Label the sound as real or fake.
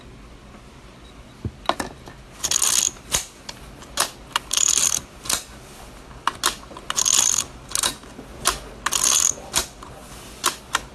real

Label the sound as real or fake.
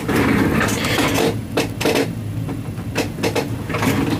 real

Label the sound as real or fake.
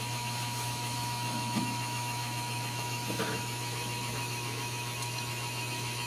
fake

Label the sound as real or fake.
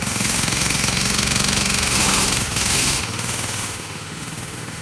fake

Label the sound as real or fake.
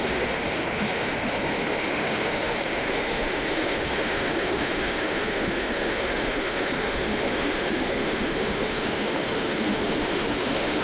fake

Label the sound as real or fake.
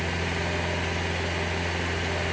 real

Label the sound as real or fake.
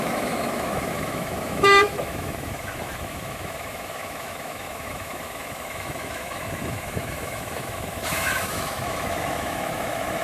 fake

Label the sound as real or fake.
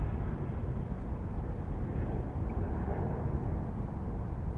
real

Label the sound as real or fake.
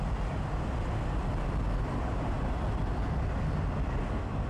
real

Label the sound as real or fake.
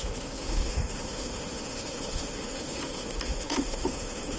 fake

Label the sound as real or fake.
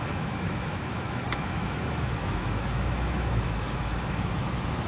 fake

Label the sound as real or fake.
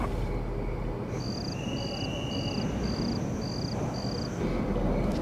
real